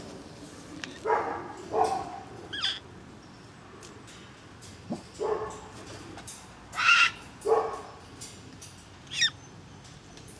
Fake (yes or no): no